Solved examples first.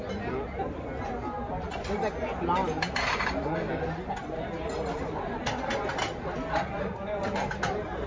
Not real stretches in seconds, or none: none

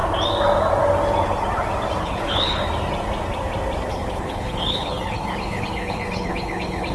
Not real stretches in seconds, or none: 2.0-2.6 (codec, HILCodec); 3.9-6.9

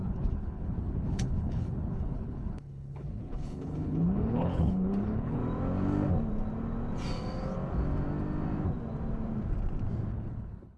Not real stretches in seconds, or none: 0.0-5.4 (codec, HILCodec); 10.1-10.8

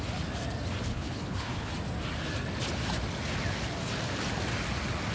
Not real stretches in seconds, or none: 0.9-1.7 (codec, HILCodec)

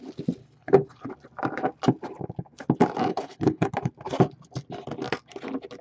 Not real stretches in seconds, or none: 0.4-1.1 (codec, HILCodec); 3.1-3.7

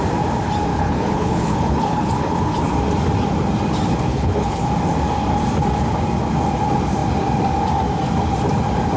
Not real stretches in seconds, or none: 0.7-2.6 (codec, HILCodec); 4.1-4.7